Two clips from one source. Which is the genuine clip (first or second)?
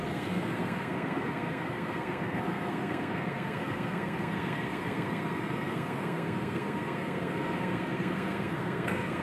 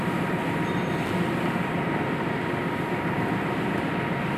second